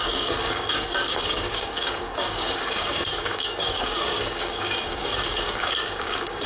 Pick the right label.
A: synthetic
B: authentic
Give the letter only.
A